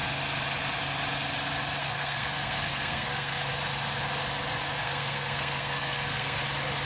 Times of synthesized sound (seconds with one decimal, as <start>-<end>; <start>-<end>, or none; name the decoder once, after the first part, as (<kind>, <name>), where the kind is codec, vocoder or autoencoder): 1.8-3.5 (codec, SNAC); 4.8-6.4